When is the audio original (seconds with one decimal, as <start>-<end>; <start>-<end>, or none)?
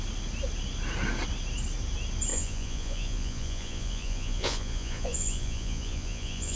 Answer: 0.0-2.3